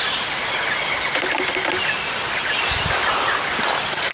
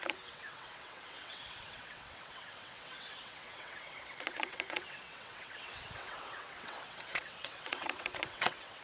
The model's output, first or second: second